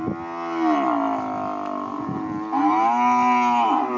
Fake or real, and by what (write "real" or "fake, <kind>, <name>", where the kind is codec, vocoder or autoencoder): real